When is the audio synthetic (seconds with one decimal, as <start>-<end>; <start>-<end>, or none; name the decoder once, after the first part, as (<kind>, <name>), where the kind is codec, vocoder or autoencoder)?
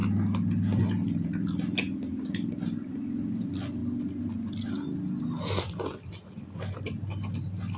none